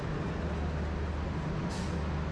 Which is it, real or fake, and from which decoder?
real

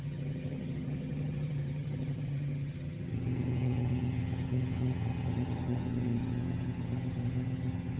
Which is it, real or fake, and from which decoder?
fake, vocoder, HiFi-GAN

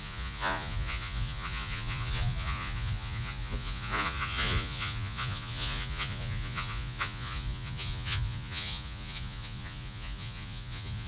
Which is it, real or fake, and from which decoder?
fake, vocoder, Vocos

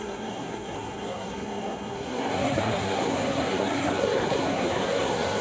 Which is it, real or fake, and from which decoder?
fake, codec, SNAC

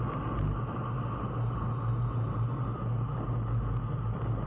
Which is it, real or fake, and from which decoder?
real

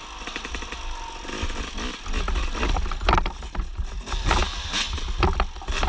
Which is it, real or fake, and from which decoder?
real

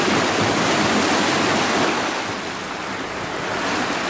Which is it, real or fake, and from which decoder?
real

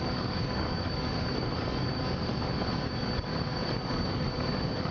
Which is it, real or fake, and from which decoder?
fake, codec, DAC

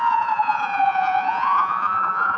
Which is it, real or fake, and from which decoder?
fake, vocoder, Vocos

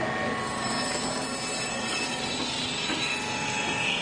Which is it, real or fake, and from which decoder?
real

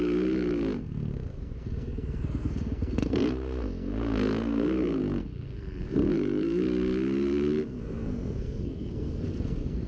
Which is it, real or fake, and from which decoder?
fake, codec, SNAC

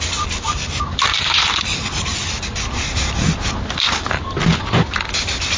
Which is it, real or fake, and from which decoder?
real